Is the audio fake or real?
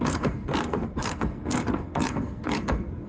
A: fake